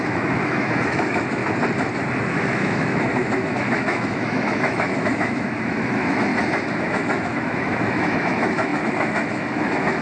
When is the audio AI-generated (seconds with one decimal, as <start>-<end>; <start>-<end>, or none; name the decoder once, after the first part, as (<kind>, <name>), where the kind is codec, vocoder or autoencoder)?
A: 0.0-1.4 (autoencoder, DAC-VAE); 2.2-6.3; 6.8-10.0